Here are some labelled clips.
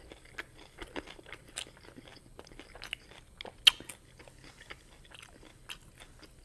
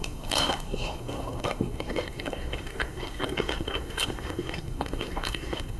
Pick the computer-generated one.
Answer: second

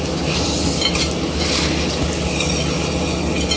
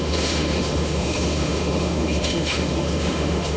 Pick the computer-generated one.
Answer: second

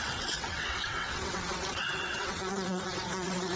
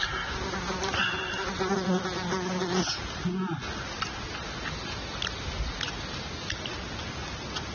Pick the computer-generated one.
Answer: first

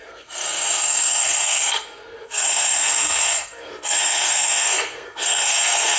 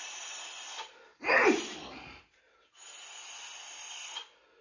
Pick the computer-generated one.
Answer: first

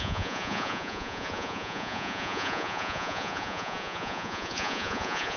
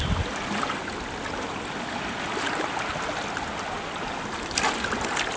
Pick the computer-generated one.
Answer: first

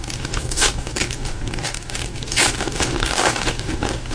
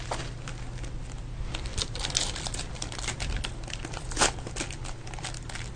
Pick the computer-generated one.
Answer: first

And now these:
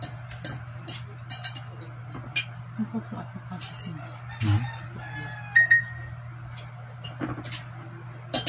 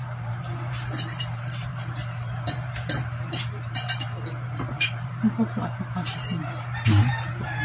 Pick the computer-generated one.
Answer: second